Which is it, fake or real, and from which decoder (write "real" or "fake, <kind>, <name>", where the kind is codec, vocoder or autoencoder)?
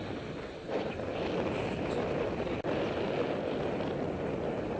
real